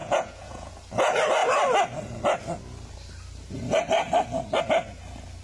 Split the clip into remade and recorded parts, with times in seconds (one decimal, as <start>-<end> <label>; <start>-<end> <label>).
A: 0.0-0.7 remade; 0.7-5.4 recorded